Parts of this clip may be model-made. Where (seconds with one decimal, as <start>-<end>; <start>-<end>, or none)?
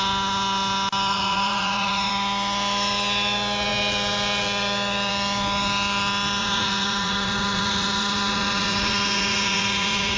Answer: 1.1-2.1; 6.4-10.2